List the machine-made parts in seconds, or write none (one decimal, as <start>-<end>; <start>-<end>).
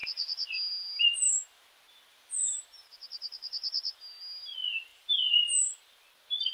4.9-5.8